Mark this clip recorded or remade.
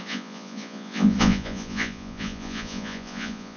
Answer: remade